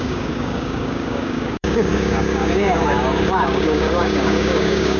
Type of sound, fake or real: fake